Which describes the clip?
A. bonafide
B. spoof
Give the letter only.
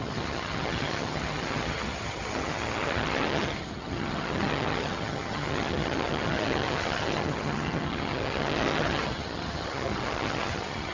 B